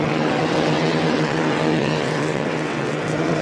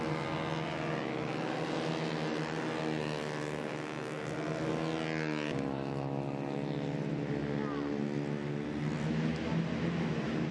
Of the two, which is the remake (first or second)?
first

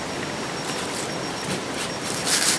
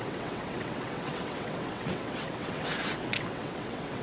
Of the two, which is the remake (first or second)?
second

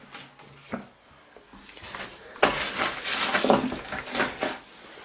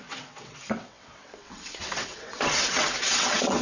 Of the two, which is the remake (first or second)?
second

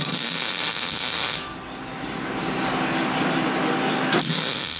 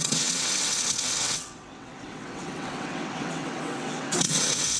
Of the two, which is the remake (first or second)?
second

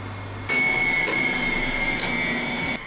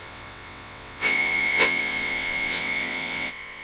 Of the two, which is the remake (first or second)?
second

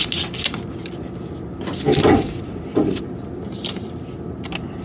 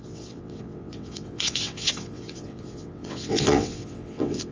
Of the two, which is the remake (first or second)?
second